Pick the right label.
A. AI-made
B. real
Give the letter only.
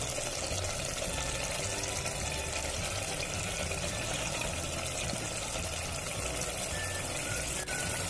B